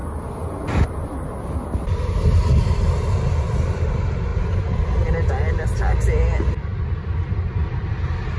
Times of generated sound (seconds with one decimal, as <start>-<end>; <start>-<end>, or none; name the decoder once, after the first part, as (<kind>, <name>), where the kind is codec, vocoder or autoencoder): none